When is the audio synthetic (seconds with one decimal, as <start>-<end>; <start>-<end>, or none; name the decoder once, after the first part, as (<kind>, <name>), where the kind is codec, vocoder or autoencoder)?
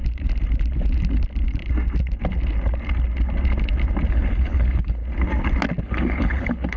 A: 4.1-5.0 (codec, HILCodec); 5.8-6.8